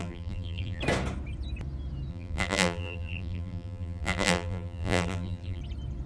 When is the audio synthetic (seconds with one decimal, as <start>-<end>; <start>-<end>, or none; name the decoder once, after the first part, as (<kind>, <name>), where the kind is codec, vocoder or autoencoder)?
0.0-0.8 (vocoder, BigVGAN v2); 2.1-5.6